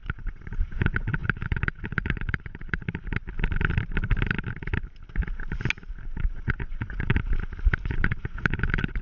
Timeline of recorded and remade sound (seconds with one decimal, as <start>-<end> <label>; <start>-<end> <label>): 0.0-2.8 remade; 2.8-6.2 recorded; 6.2-7.1 remade; 7.1-7.8 recorded; 7.8-9.0 remade